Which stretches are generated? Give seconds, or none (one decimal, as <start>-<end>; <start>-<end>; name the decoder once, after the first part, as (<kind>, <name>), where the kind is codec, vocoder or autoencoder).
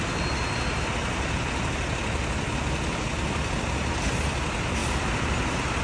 1.0-1.7 (vocoder, BigVGAN v2)